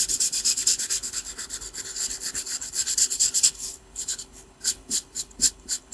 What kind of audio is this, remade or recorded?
remade